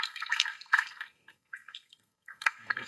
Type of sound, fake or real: fake